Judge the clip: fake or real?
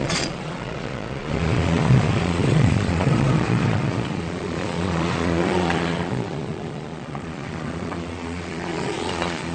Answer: fake